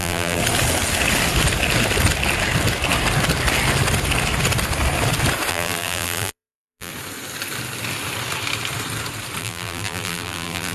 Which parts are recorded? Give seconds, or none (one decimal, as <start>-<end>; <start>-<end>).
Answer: 0.4-5.5; 6.9-9.4